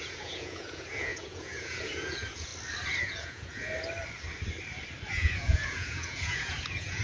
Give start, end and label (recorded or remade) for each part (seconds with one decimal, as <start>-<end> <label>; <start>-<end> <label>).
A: 0.0-2.5 remade; 2.5-3.0 recorded; 3.0-3.7 remade; 3.7-5.1 recorded; 5.1-7.0 remade